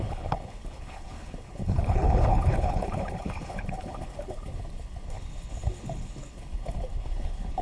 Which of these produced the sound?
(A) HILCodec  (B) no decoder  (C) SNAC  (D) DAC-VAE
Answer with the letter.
A